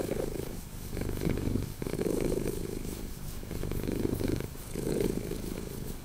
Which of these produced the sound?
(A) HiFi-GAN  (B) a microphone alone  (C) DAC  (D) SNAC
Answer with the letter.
C